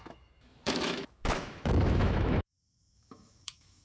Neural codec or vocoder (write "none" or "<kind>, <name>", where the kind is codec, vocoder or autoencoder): autoencoder, DAC-VAE